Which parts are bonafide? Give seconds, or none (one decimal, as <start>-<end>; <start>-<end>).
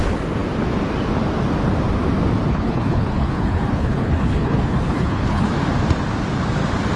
0.0-2.5; 5.5-7.0